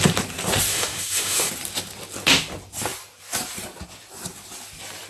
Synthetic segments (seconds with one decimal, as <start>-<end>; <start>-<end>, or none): 0.7-1.5